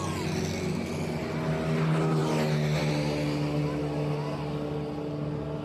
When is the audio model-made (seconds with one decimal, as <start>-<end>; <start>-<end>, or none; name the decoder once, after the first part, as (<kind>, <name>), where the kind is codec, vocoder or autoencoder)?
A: none